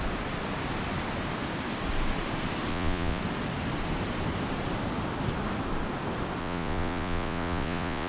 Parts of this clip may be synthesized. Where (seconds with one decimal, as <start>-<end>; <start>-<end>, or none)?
2.7-3.2; 6.4-8.1